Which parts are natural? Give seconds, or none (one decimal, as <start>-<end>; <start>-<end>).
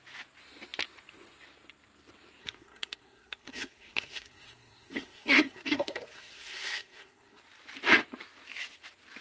0.0-2.4; 7.4-9.2